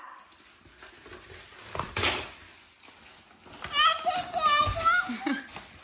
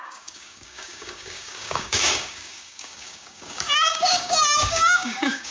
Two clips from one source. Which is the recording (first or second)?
first